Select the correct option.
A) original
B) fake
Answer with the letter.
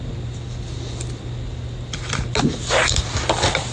A